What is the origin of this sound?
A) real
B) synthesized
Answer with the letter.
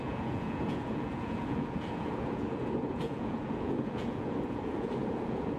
B